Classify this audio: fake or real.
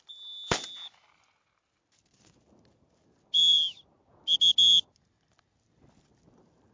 real